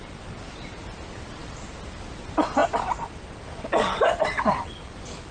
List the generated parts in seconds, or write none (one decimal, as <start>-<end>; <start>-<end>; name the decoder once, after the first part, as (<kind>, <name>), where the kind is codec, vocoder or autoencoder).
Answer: none